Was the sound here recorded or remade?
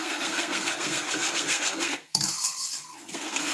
remade